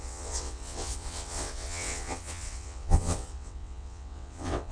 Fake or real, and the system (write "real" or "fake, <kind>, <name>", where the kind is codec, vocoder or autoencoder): fake, vocoder, WaveNeXt